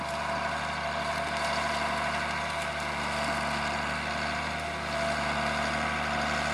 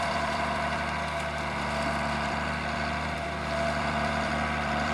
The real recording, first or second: first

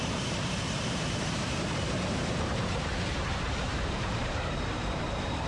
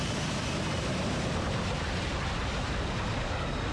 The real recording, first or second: second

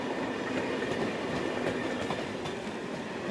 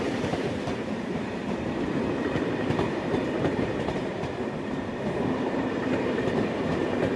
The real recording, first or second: first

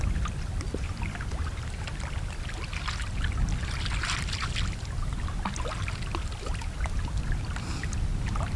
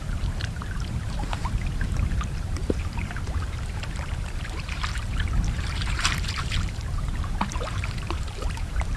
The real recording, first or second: first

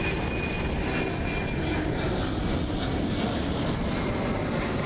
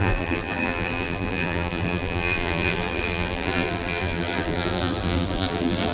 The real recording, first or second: first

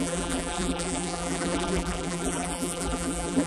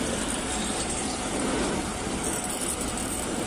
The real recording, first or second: second